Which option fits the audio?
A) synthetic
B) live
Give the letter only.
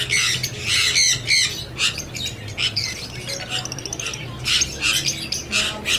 B